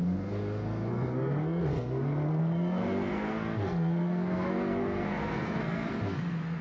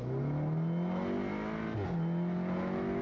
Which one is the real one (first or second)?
second